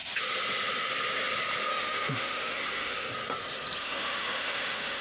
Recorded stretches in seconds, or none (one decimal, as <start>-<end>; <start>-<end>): 0.0-1.7; 3.1-3.8